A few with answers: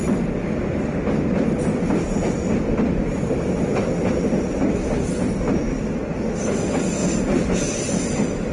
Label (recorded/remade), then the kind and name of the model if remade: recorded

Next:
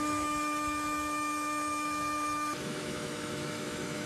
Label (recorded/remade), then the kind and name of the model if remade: remade, autoencoder, DAC-VAE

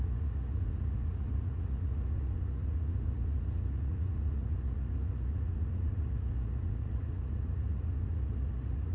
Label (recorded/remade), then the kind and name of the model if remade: remade, vocoder, Vocos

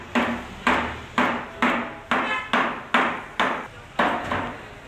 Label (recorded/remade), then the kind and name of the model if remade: recorded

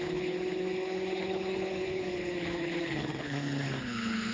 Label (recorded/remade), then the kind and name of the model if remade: remade, codec, HILCodec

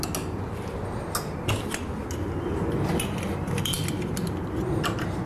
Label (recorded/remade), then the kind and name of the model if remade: recorded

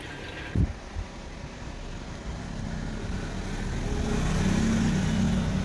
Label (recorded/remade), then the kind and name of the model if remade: recorded